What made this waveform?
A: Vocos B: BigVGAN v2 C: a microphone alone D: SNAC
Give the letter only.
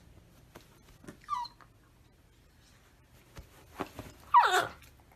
C